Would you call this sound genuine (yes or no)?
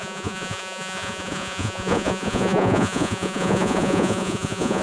no